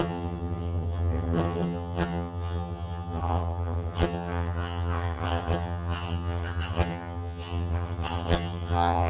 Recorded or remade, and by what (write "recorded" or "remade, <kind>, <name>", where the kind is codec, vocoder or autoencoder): remade, vocoder, HiFi-GAN